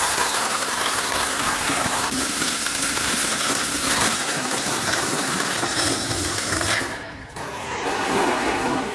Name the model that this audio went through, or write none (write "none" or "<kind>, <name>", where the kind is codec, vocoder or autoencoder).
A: codec, SNAC